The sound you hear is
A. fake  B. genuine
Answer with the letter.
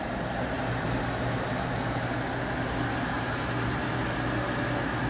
B